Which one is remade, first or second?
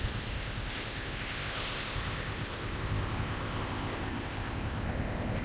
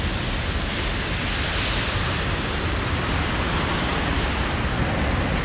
first